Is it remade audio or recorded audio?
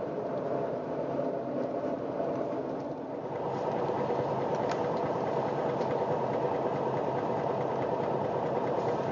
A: remade